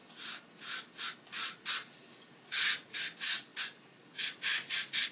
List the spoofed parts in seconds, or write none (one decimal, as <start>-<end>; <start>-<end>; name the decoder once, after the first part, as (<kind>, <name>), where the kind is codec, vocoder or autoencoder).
none